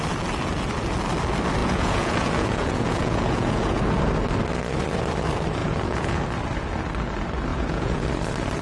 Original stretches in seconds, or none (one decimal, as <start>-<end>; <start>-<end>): 0.0-1.6; 3.8-5.6; 6.2-7.5; 8.1-8.6